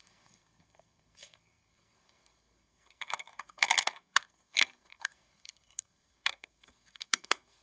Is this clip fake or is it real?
fake